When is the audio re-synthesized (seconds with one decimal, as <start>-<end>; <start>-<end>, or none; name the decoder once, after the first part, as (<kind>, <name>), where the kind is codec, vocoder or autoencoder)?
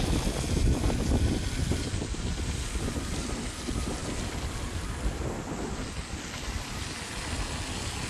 none